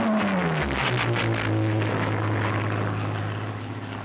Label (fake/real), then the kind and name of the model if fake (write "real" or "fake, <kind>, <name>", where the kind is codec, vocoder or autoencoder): real